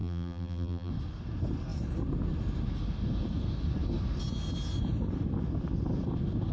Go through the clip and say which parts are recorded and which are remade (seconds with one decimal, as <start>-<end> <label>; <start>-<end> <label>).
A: 0.0-0.9 remade; 0.9-6.5 recorded